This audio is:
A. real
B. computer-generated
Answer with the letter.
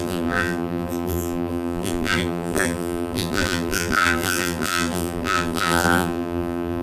B